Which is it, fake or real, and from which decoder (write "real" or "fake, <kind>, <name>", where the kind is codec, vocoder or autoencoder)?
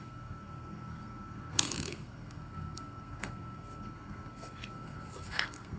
fake, codec, SNAC